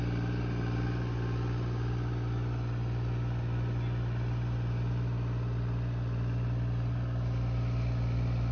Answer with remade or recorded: recorded